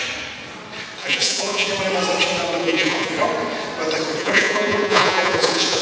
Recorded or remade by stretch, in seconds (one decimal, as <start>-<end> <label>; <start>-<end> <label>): 0.0-1.0 recorded; 1.0-1.7 remade; 1.7-2.6 recorded; 2.6-3.1 remade; 3.1-4.2 recorded; 4.2-5.8 remade